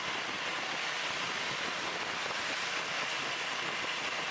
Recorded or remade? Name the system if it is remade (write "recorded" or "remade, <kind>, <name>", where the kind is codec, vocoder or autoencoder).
recorded